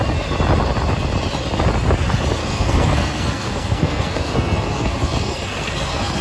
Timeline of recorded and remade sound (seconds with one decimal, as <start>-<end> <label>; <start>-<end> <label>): 0.0-2.4 recorded; 2.4-6.2 remade

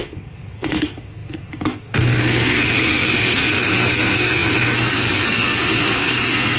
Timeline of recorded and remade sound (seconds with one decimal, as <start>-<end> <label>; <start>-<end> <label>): 0.0-6.6 remade

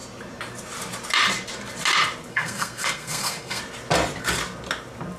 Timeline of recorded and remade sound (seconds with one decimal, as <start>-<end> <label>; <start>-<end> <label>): 0.0-2.3 recorded; 2.3-3.6 remade; 3.6-5.2 recorded

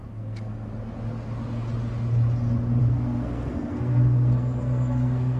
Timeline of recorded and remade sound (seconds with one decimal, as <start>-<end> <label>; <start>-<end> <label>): 0.0-0.7 remade; 0.7-2.8 recorded; 2.8-5.4 remade

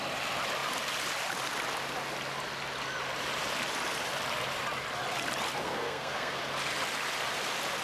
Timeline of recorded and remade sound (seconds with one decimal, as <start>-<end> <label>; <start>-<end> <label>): 0.0-5.6 recorded; 5.6-6.4 remade; 6.4-7.8 recorded

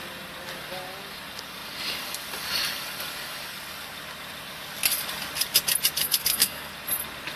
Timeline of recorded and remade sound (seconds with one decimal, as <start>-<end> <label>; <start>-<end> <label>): 0.0-6.0 recorded; 6.0-6.7 remade; 6.7-7.4 recorded